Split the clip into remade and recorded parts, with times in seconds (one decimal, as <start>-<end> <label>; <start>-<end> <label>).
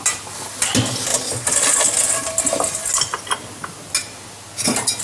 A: 0.0-5.0 recorded